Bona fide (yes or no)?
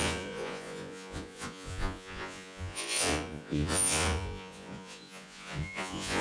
no